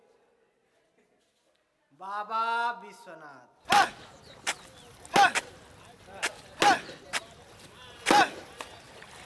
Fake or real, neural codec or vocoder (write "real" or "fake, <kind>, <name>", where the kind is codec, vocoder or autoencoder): real